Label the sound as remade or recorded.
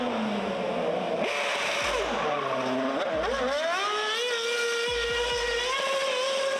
recorded